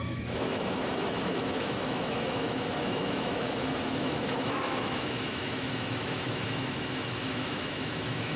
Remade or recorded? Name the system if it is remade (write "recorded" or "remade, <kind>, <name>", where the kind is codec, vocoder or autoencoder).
remade, autoencoder, DAC-VAE